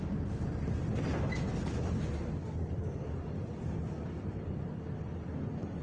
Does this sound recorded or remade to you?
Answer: recorded